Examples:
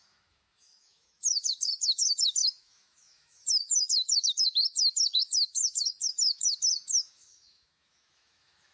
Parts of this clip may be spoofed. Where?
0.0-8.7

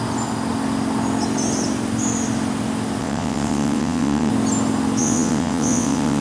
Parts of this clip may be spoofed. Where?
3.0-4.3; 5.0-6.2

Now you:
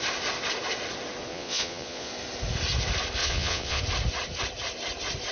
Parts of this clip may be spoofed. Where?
1.3-2.1; 3.2-3.8

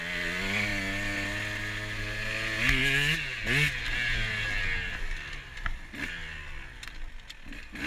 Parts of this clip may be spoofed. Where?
none

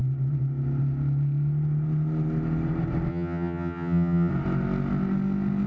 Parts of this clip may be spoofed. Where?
3.1-4.3

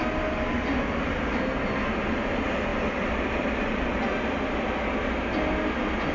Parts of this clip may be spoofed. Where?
none

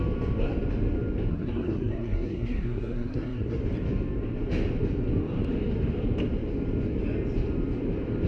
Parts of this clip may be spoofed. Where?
1.3-3.6

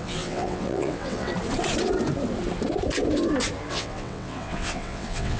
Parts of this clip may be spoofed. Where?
0.0-1.3; 3.7-5.4